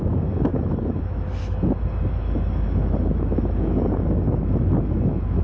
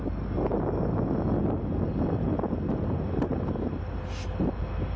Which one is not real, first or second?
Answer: first